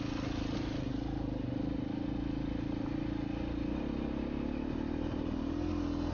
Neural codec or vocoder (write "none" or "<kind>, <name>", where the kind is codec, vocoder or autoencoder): none